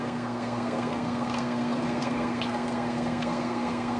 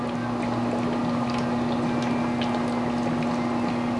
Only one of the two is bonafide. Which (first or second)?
second